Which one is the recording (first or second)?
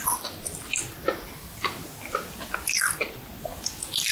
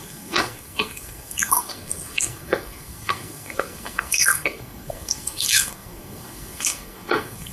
first